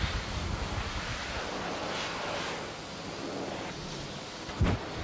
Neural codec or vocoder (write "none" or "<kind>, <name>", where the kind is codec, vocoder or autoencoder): none